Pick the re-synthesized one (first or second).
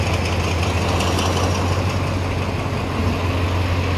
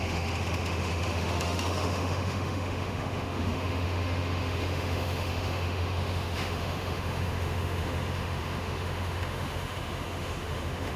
second